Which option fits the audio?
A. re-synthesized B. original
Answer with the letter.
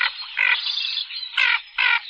B